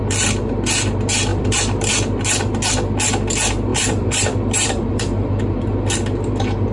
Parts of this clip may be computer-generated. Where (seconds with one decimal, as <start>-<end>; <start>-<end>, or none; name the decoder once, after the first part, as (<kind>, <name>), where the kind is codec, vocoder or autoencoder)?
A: 1.3-1.9 (vocoder, BigVGAN v2); 3.7-5.4